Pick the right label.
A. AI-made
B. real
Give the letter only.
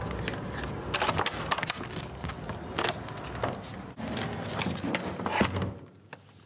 B